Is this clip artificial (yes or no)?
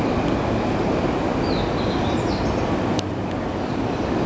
no